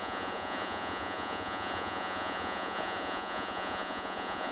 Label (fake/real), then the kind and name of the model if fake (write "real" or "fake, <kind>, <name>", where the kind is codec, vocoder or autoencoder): fake, vocoder, Vocos